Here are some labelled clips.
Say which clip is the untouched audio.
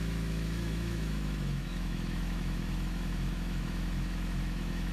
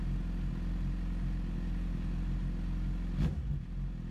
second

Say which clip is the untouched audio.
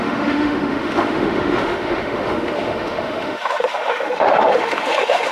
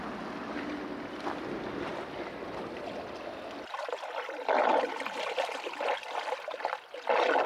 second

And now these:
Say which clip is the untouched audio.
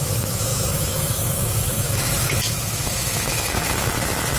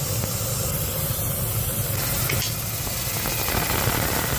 second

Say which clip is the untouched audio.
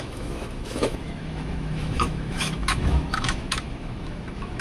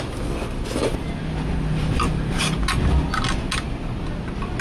second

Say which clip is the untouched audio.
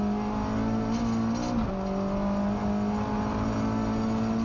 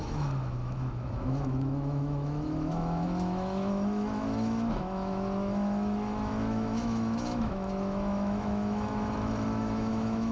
first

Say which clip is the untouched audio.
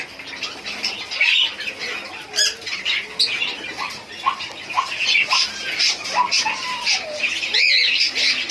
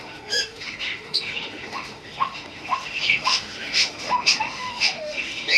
first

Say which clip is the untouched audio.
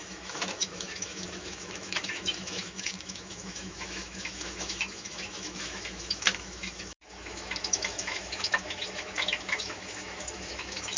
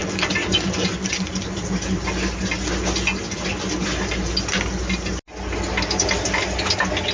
second